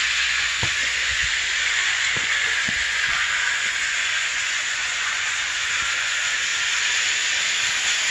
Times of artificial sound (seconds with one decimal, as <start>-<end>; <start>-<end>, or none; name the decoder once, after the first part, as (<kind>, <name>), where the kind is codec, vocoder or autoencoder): 0.0-6.5 (vocoder, Vocos)